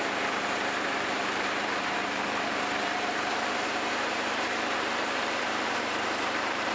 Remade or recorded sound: remade